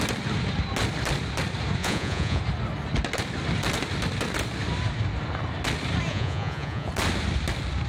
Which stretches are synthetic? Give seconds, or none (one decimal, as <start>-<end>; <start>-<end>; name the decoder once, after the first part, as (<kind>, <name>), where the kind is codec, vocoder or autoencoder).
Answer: 1.8-2.4 (vocoder, Vocos); 6.1-6.9